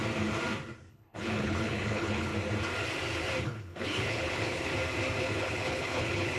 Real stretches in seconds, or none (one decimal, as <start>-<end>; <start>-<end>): 0.0-0.9; 2.3-3.4; 4.7-5.2